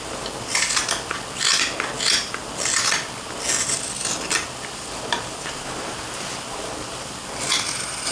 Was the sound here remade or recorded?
recorded